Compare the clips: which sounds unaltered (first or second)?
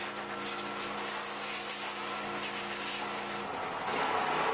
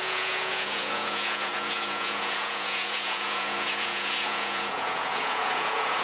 first